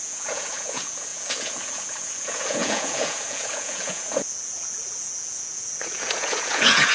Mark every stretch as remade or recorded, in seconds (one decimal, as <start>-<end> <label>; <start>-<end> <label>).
0.0-6.9 remade